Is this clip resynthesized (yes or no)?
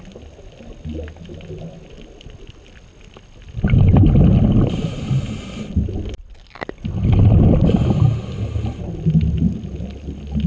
no